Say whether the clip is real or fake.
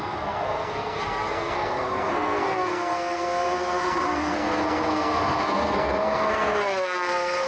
fake